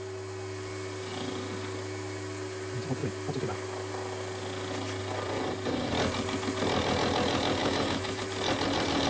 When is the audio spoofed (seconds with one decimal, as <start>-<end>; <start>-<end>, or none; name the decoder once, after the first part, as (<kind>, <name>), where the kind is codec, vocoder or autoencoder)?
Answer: 7.6-8.2 (autoencoder, DAC-VAE)